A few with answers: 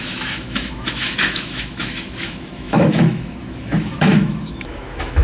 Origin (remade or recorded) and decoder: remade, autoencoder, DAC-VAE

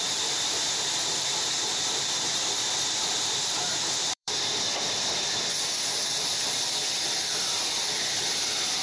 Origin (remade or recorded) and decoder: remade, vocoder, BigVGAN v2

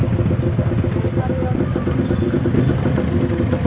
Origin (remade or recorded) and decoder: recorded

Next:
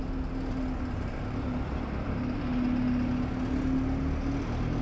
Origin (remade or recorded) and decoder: recorded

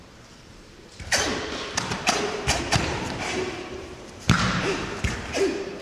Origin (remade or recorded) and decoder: remade, vocoder, BigVGAN v2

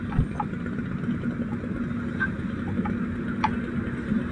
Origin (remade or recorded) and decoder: recorded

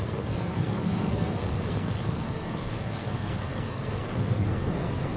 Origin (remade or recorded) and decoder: remade, codec, SNAC